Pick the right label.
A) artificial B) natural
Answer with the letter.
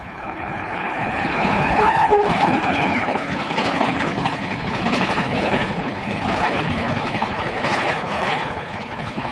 A